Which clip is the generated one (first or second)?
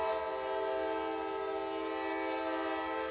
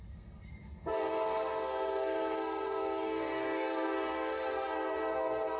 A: second